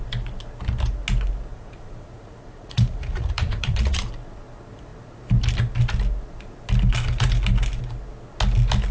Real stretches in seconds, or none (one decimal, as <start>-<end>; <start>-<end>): 0.0-1.5; 4.0-8.9